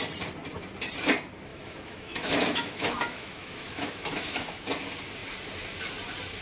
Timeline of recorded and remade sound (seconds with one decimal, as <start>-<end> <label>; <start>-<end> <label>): 0.0-1.5 recorded; 1.5-4.6 remade; 4.6-6.4 recorded